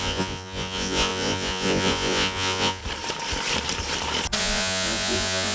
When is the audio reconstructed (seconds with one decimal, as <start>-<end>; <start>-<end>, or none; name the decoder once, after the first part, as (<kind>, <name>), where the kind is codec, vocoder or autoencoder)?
0.0-2.8 (vocoder, Vocos); 4.4-5.5